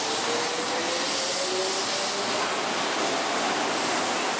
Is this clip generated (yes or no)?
no